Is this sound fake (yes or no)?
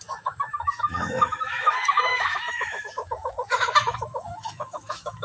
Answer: yes